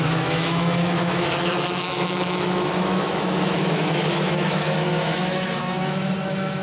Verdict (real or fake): fake